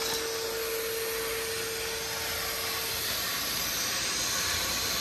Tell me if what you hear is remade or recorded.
recorded